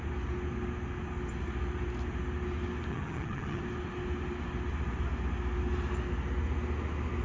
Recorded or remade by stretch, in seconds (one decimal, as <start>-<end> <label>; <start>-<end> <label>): 0.0-2.9 recorded; 2.9-3.6 remade; 3.6-7.2 recorded